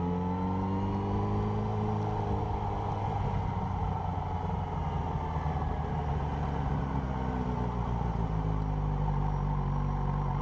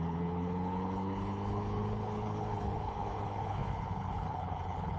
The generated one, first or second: second